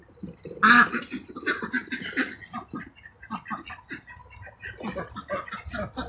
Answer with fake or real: real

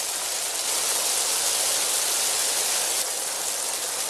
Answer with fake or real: real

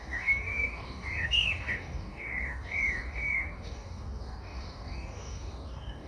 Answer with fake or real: fake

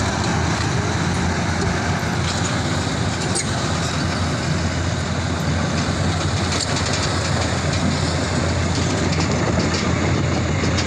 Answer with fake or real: real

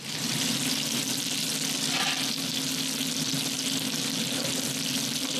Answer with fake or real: real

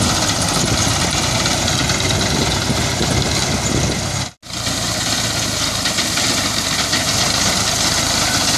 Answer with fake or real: real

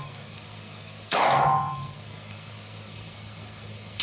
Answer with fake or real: fake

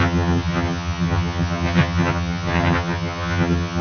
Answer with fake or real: fake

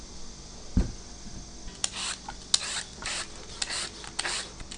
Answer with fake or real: real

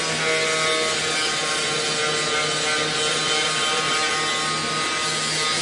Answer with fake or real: real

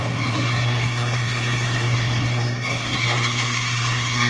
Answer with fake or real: fake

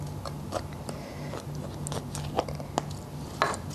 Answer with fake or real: real